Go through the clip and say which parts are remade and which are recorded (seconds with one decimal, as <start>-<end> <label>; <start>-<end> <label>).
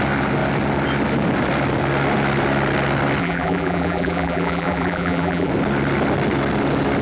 0.0-3.2 recorded; 3.2-5.5 remade; 5.5-7.0 recorded